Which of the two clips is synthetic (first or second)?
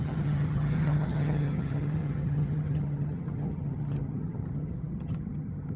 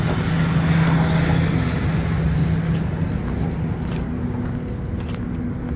first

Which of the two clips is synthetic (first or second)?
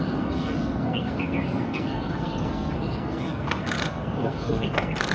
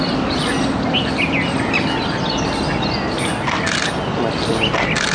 first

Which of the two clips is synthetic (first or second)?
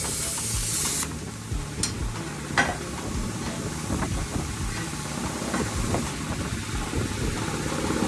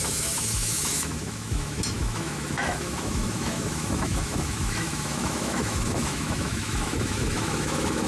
second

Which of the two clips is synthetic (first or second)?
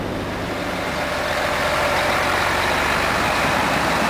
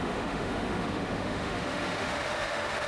second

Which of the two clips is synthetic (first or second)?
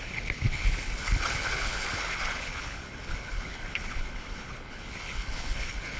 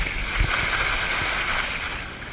first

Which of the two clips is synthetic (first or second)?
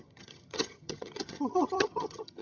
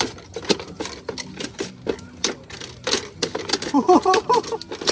first